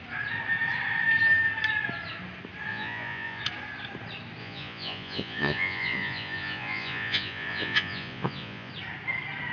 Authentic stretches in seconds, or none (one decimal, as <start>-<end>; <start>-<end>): 0.0-2.7; 3.4-4.4; 8.7-9.5